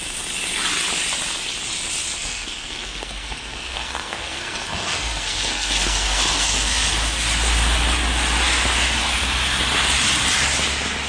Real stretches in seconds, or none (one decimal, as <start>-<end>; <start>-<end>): 0.0-2.1; 6.9-11.1